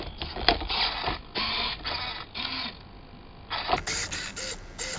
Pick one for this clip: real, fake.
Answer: real